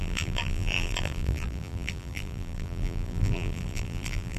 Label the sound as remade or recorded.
remade